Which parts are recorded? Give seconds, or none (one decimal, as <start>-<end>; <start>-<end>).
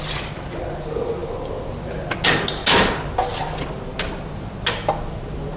0.0-5.6